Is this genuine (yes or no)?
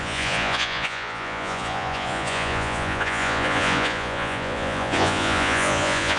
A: no